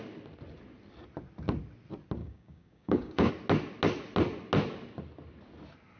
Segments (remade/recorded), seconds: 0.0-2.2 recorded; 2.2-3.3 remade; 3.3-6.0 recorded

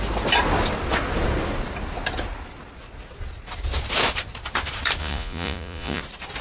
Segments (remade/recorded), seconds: 0.0-5.0 recorded; 5.0-6.0 remade; 6.0-6.4 recorded

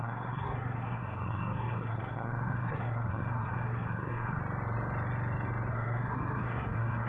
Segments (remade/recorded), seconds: 0.0-4.4 remade; 4.4-5.7 recorded; 5.7-7.1 remade